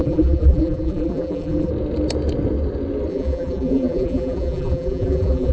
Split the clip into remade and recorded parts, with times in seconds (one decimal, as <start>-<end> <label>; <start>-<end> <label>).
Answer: 0.0-1.7 remade; 1.7-3.1 recorded; 3.1-5.5 remade